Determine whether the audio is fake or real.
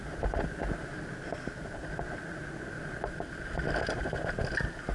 real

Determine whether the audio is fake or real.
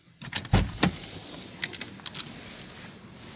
real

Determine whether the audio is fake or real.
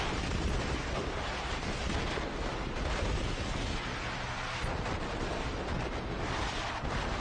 real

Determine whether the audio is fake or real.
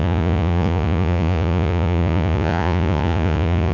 fake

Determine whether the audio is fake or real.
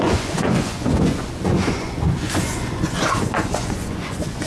fake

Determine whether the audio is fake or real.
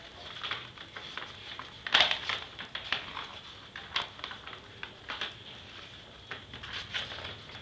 real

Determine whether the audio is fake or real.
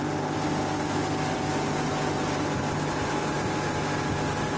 real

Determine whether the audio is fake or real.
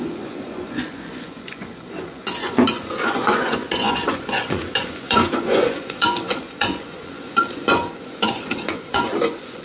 fake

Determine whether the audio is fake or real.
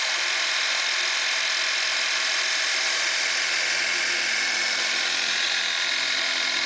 real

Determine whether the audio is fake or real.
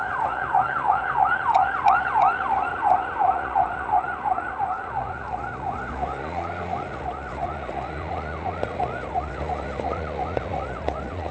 fake